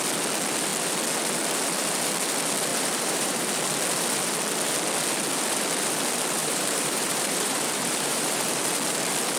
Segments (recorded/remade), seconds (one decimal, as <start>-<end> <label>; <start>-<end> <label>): 0.0-2.7 recorded; 2.7-3.5 remade; 3.5-6.4 recorded; 6.4-8.6 remade; 8.6-9.4 recorded